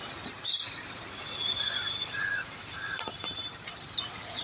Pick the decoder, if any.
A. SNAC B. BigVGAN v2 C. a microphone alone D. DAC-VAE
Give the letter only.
B